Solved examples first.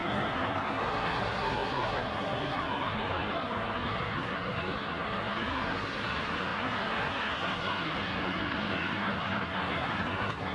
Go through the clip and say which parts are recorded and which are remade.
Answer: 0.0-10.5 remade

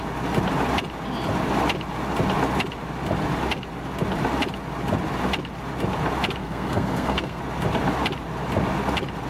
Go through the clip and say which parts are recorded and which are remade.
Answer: 0.0-6.4 recorded; 6.4-7.4 remade; 7.4-9.3 recorded